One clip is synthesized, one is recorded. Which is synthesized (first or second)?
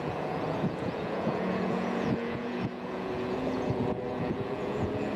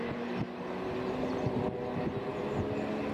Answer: first